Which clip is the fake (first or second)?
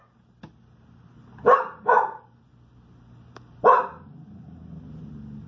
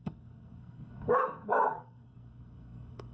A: second